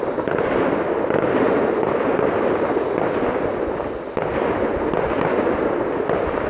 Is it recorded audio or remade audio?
recorded